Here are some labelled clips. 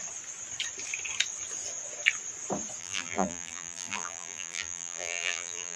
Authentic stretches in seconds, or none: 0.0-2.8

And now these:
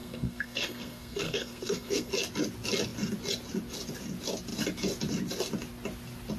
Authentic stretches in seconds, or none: 2.1-6.4

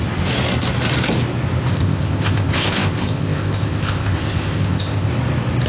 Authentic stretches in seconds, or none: 0.0-1.7; 5.1-5.7

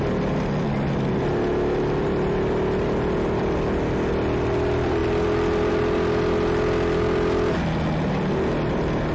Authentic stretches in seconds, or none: 0.0-9.1

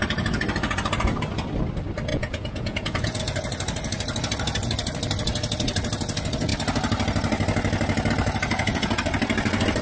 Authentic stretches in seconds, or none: 0.0-2.1; 3.2-8.5; 9.0-9.8

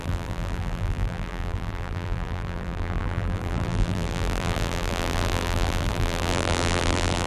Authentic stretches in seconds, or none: none

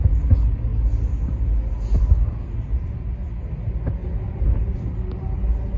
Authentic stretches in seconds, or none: 0.0-4.0; 4.9-5.8